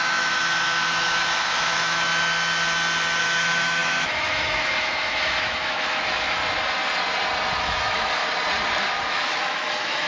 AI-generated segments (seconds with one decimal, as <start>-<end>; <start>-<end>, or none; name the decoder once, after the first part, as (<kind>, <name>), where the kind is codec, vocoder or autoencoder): 0.0-2.1 (autoencoder, DAC-VAE); 3.2-6.4; 7.6-8.2; 9.1-10.1

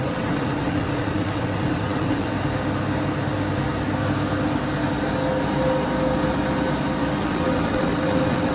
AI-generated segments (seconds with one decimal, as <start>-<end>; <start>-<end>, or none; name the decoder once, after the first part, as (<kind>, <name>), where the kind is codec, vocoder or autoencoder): 0.0-2.3 (vocoder, WaveNeXt); 7.2-8.5